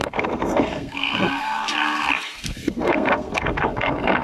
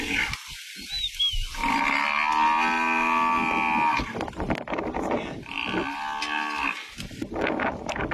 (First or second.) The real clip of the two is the second